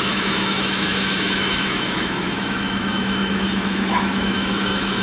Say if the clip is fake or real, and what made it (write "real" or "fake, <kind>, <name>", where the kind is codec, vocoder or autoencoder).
fake, autoencoder, DAC-VAE